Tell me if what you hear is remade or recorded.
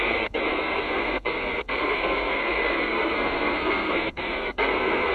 remade